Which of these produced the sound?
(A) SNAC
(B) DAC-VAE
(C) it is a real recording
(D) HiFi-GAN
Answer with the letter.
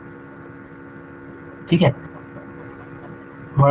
C